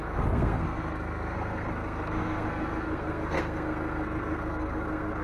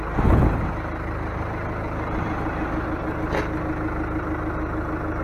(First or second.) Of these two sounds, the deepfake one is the first